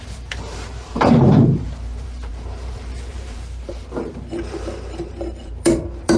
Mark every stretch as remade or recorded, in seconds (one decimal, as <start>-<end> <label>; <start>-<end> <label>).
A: 0.0-6.2 remade